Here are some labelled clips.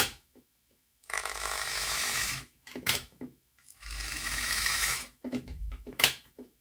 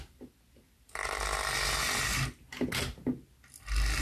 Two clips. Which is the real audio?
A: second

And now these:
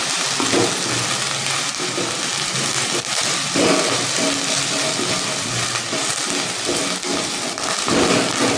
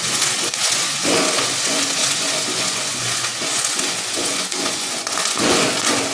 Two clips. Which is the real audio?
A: first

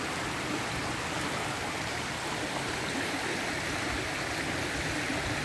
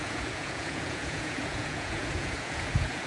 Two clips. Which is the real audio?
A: first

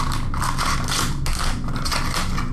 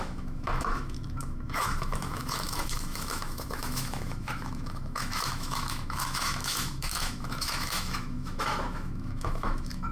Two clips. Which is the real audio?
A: first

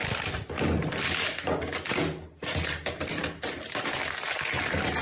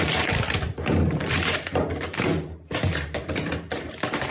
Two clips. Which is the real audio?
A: first